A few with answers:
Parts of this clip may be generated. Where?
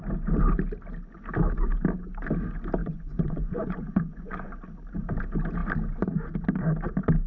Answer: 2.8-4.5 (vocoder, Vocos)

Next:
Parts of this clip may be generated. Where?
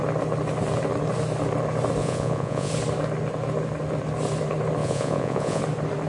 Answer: 2.0-2.7 (vocoder, Vocos); 4.8-5.6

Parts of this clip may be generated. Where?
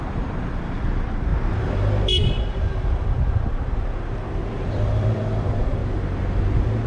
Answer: 0.0-1.3 (vocoder, BigVGAN v2); 4.7-5.8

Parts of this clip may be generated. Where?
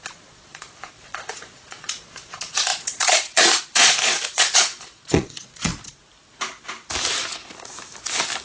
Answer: 0.0-5.7 (vocoder, Vocos)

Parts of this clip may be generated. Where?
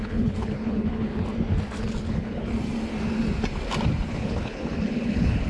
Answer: 0.0-1.1 (codec, HILCodec); 2.1-2.5; 4.1-5.5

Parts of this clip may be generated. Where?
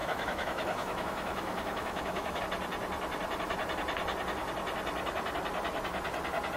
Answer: 0.0-2.4 (autoencoder, DAC-VAE)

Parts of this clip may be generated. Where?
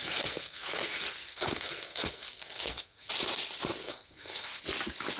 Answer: 0.0-3.1 (codec, SNAC); 3.8-4.6